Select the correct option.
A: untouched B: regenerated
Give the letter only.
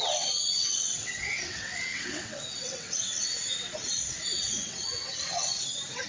B